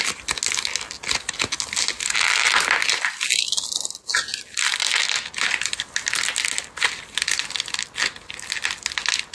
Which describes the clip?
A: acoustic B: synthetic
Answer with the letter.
A